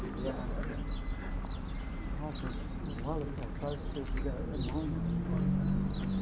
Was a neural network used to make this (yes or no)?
no